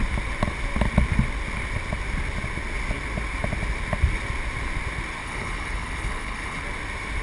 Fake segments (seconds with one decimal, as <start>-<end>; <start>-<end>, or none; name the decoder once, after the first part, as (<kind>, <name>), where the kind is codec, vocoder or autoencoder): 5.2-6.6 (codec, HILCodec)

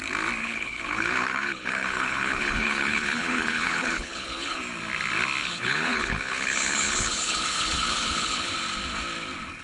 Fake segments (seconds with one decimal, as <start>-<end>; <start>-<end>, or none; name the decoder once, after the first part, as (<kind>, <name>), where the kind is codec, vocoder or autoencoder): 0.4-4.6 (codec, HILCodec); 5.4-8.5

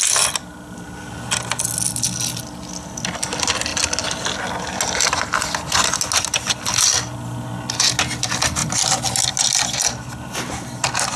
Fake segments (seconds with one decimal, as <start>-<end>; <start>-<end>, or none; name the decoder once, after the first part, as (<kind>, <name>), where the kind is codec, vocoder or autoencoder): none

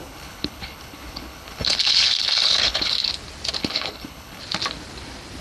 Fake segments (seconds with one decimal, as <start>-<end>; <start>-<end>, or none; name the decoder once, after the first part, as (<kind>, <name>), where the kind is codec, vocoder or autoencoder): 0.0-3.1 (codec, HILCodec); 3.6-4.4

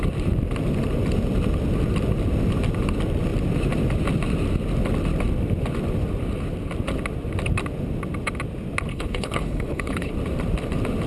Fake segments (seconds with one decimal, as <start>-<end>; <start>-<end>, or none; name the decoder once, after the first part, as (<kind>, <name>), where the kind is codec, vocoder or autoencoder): 8.9-10.1 (codec, HILCodec)

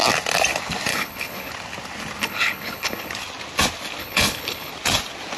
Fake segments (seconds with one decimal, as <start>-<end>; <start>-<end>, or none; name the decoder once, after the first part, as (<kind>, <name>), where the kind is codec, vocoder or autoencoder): 0.9-1.5 (codec, HILCodec); 2.2-3.1; 4.0-4.7